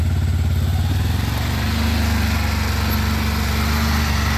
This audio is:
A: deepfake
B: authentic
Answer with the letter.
B